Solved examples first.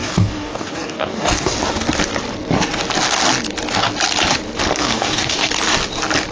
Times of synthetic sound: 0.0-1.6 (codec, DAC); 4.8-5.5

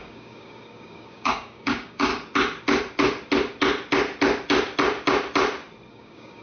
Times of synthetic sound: 0.0-2.1 (codec, DAC); 5.9-6.4

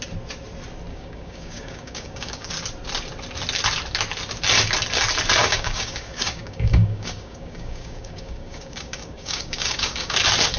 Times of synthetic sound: 0.9-2.5 (codec, DAC); 5.4-10.2

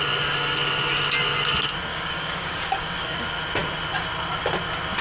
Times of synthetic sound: 1.9-3.2 (codec, DAC)

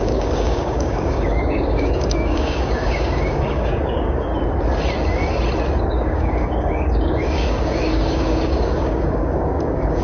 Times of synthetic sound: 0.0-4.3 (codec, DAC); 5.8-10.0

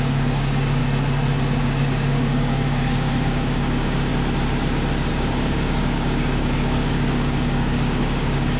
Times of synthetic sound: 0.0-0.8 (codec, DAC); 1.6-4.1; 5.1-8.6

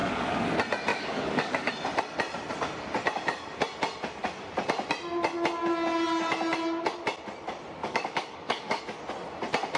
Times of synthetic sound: 0.0-0.5 (codec, DAC); 0.9-1.7; 7.8-8.8